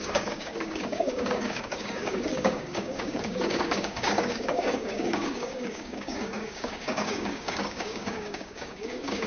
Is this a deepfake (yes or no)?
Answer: yes